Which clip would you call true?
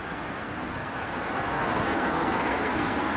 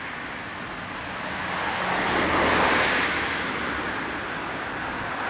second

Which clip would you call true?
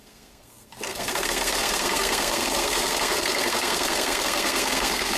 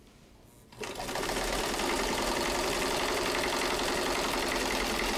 second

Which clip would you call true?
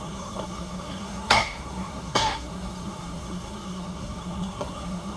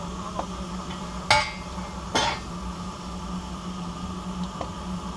second